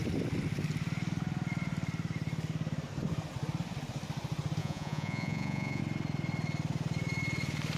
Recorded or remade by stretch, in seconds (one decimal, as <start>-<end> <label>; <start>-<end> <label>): 0.0-4.6 recorded; 4.6-5.8 remade; 5.8-7.8 recorded